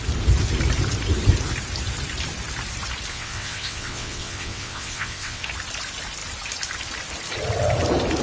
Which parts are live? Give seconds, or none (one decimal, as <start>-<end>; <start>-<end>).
0.0-3.1; 5.4-8.2